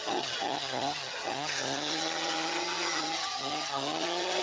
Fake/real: fake